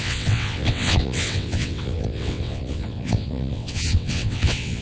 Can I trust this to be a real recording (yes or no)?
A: no